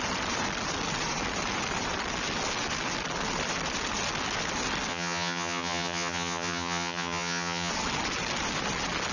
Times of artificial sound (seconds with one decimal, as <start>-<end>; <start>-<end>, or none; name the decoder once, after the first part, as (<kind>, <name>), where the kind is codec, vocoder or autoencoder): 4.9-7.7 (vocoder, HiFi-GAN)